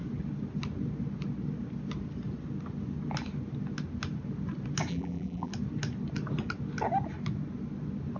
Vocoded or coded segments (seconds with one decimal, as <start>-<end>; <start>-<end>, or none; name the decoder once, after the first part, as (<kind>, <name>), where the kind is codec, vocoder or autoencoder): 4.9-5.5 (vocoder, BigVGAN v2)

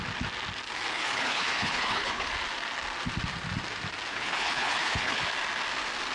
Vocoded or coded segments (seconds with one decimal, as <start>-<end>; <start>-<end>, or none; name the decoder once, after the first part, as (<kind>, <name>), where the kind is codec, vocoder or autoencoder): 0.9-2.3 (codec, HILCodec); 4.1-5.2

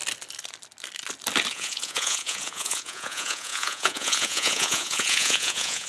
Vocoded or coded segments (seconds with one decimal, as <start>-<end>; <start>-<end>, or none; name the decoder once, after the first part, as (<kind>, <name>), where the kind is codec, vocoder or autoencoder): 1.5-5.9 (vocoder, Vocos)

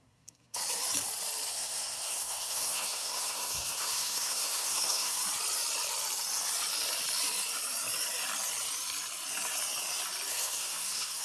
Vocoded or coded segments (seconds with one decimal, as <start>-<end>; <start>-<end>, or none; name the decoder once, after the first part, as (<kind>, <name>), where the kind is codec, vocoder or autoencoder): 0.0-0.6 (codec, SNAC); 1.5-5.2; 10.3-11.2